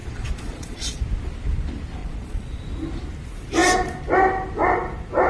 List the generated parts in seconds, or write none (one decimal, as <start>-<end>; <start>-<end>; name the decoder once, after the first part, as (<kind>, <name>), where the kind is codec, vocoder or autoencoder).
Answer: 0.0-1.0 (vocoder, Vocos); 2.0-2.6